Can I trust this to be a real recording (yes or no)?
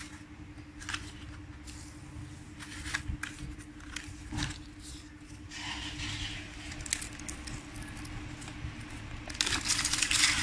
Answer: yes